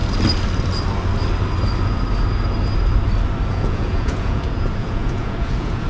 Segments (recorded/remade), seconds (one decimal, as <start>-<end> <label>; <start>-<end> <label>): 0.0-3.5 recorded; 3.5-5.9 remade